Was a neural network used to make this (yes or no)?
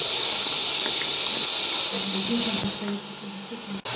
no